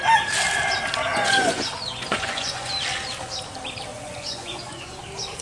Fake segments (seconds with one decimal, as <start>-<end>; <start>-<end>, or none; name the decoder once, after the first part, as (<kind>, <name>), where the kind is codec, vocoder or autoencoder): 1.1-2.7 (vocoder, Vocos); 3.9-5.0

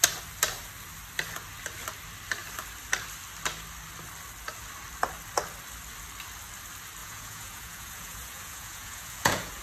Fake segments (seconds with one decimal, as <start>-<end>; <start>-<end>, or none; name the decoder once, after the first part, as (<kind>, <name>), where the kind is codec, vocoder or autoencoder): 7.0-9.6 (vocoder, Vocos)

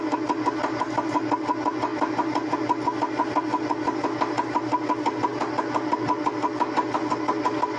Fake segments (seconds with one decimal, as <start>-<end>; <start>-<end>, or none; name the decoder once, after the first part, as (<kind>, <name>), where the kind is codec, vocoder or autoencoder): none

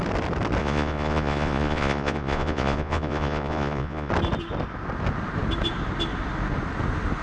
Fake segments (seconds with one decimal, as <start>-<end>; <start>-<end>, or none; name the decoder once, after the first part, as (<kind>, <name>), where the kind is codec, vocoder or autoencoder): 0.6-4.1 (vocoder, Vocos)

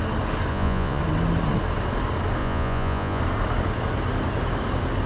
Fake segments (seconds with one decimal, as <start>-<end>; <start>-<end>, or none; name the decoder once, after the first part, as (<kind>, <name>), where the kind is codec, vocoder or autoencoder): 0.5-1.0 (vocoder, Vocos); 2.4-3.2

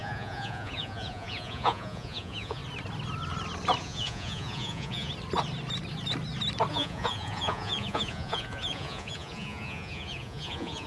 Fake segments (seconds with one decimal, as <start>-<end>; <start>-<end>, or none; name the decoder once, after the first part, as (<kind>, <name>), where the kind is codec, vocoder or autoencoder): 0.0-2.6 (vocoder, Vocos); 3.8-5.1; 6.7-10.9

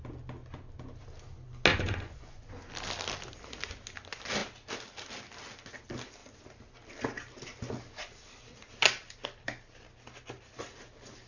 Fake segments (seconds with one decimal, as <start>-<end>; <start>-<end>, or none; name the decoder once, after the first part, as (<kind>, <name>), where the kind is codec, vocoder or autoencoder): 1.7-2.5 (vocoder, Vocos)

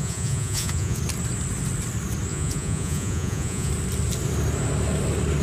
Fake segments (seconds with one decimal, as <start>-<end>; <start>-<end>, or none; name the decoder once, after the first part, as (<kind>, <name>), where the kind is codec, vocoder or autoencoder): 0.0-1.0 (vocoder, Vocos); 2.3-3.7